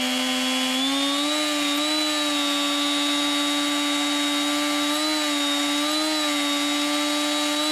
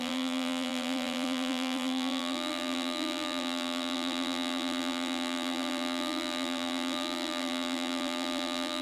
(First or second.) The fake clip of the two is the second